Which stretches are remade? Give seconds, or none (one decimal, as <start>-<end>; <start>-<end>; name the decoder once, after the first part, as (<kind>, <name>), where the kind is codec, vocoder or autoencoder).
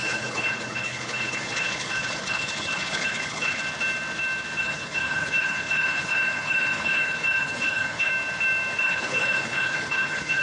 0.0-3.6 (codec, HILCodec); 4.6-8.1; 8.8-10.4